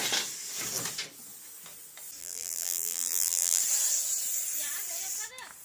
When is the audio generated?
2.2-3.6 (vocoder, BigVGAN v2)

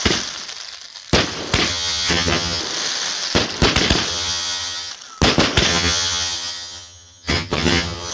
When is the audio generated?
1.7-2.6 (vocoder, HiFi-GAN); 4.1-4.9; 5.7-8.1

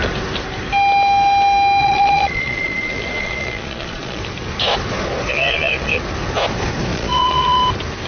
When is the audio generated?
1.8-4.2 (vocoder, Vocos); 5.3-6.0; 6.9-7.6

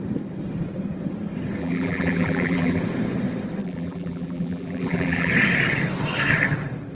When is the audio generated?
1.6-2.8 (vocoder, BigVGAN v2); 3.6-5.3

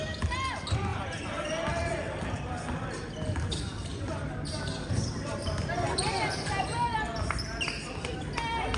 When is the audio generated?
0.9-4.0 (vocoder, BigVGAN v2); 5.4-7.2

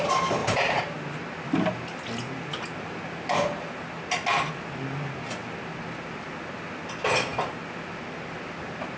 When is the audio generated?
none

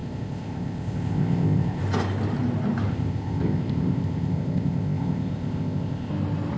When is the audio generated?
0.0-1.8 (codec, ZipCodec); 2.9-6.1

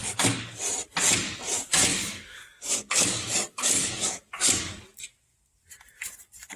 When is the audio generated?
0.0-0.6 (codec, DAC); 1.9-4.8